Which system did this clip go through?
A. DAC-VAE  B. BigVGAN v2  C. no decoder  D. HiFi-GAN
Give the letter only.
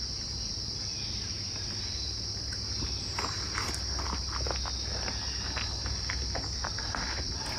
C